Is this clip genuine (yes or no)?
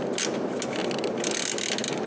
yes